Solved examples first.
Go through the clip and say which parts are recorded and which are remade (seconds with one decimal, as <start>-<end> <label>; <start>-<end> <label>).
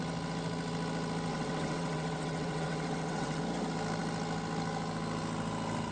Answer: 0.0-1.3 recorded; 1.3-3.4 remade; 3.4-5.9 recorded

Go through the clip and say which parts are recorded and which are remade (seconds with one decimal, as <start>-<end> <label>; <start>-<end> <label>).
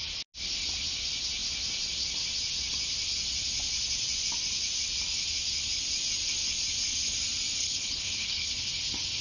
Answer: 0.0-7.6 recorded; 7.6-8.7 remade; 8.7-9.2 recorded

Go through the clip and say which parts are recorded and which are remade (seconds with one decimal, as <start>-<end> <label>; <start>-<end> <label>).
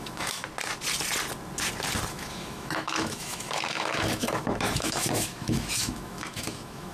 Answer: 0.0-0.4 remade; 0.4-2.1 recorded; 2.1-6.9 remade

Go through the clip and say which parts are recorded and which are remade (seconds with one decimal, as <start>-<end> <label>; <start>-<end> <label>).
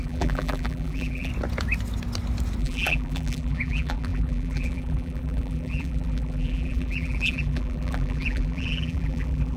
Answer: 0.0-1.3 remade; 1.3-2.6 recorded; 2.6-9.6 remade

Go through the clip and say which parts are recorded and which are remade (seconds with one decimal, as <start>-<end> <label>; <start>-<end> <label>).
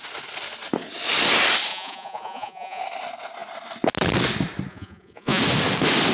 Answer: 0.0-1.7 recorded; 1.7-2.8 remade; 2.8-4.7 recorded; 4.7-5.4 remade; 5.4-6.1 recorded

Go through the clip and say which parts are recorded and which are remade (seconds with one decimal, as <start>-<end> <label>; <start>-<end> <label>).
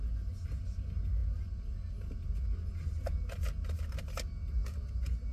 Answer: 0.0-5.3 recorded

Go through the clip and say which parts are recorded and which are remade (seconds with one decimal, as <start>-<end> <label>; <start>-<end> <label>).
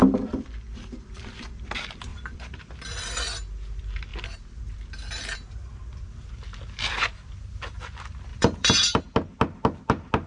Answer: 0.0-1.5 remade; 1.5-2.1 recorded; 2.1-2.7 remade; 2.7-8.3 recorded; 8.3-9.0 remade; 9.0-10.3 recorded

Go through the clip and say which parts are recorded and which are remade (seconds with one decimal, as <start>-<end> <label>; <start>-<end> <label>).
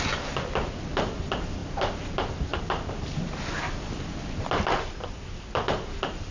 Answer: 0.0-6.3 recorded